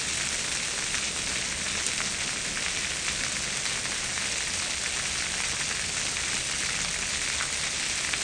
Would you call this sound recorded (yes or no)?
yes